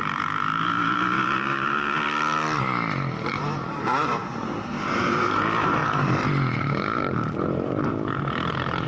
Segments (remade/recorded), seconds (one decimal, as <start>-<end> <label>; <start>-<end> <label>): 0.0-2.0 remade; 2.0-3.3 recorded; 3.3-5.8 remade; 5.8-6.6 recorded; 6.6-8.9 remade